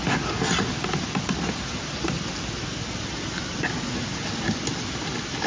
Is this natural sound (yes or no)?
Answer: yes